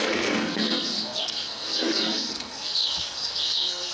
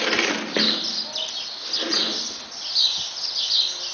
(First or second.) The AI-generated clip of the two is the first